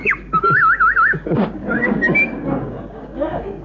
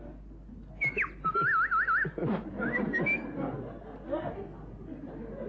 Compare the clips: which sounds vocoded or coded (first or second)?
first